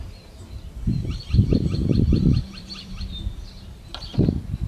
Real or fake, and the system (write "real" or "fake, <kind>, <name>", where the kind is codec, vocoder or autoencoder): fake, vocoder, BigVGAN v2